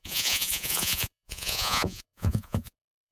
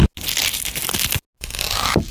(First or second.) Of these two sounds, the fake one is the first